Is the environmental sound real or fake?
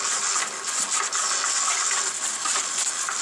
real